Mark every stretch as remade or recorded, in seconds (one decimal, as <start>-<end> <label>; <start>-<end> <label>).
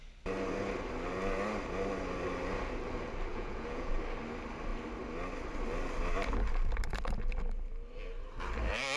0.0-3.3 recorded; 3.3-3.9 remade; 3.9-9.0 recorded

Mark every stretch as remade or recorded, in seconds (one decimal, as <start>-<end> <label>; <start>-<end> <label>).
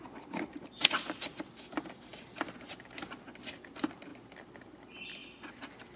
0.0-6.0 recorded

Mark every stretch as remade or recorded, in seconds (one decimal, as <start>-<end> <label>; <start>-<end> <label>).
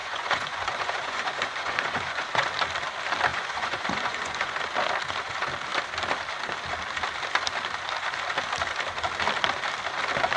0.0-2.5 remade; 2.5-3.3 recorded; 3.3-4.6 remade; 4.6-10.4 recorded